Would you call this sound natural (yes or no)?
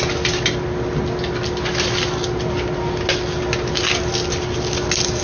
yes